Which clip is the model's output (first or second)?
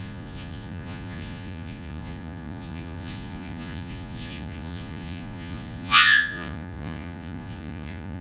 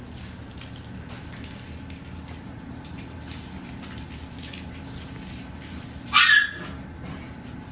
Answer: first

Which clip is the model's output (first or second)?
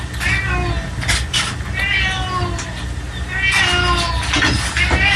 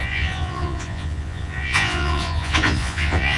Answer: second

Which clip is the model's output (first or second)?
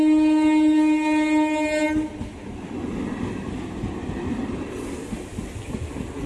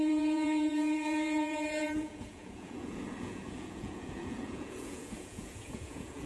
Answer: second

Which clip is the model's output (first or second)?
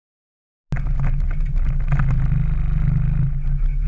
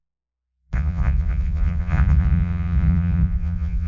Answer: second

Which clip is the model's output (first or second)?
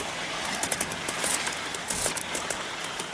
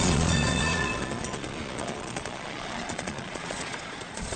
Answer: second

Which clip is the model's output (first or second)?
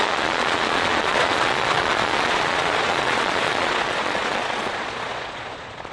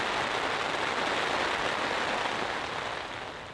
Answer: first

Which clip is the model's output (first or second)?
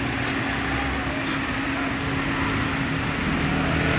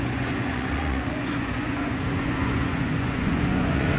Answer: second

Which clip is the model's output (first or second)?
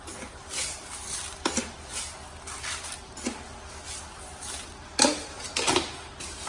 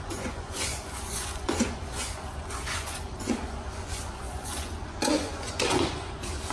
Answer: second